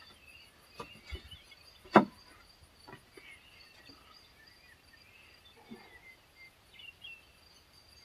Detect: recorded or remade recorded